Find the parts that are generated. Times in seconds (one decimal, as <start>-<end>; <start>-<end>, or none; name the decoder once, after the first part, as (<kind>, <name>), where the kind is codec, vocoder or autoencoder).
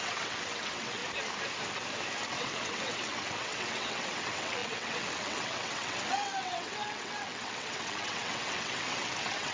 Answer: 0.0-1.0 (vocoder, WaveNeXt); 2.3-9.5